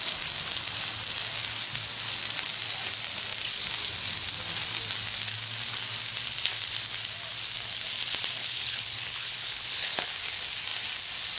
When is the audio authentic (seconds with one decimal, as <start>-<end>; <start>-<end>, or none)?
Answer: 0.0-8.4; 10.0-11.4